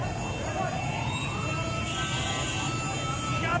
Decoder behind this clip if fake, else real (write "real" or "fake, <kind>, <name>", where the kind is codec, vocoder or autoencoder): real